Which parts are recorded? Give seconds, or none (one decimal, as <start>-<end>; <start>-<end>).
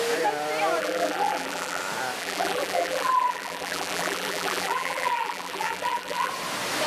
0.0-0.8; 1.8-2.2; 6.3-6.9